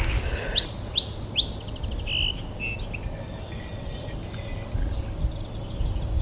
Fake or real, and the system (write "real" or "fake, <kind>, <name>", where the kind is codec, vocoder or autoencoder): real